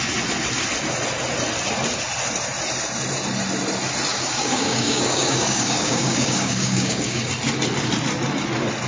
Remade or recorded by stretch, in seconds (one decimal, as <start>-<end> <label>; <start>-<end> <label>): 0.0-4.1 recorded; 4.1-7.3 remade; 7.3-8.9 recorded